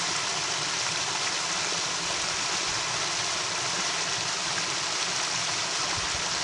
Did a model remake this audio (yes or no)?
no